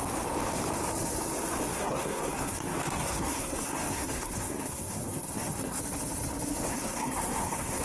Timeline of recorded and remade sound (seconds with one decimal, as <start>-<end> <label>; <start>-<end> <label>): 0.0-1.7 recorded; 1.7-5.8 remade; 5.8-6.7 recorded; 6.7-7.8 remade